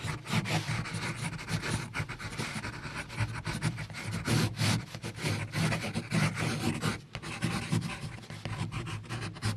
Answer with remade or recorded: recorded